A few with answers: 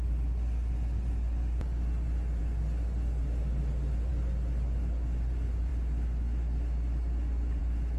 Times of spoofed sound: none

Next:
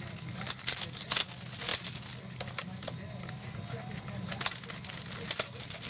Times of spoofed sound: none